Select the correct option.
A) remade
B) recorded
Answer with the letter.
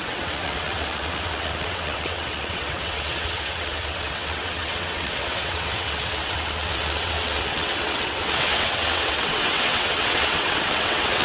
A